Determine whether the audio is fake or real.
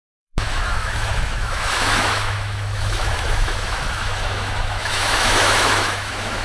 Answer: fake